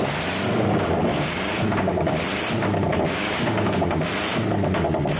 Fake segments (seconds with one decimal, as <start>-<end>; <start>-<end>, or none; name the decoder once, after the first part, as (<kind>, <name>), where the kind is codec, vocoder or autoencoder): 1.1-2.1 (codec, DAC); 2.9-4.1